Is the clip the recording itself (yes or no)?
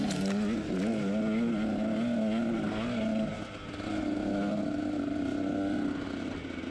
yes